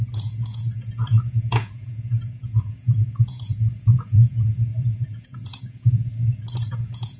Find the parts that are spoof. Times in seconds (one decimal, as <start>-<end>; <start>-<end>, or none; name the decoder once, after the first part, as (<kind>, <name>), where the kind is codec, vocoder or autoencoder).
0.0-6.1 (vocoder, Vocos); 6.7-7.2